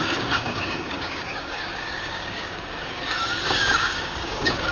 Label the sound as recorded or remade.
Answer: remade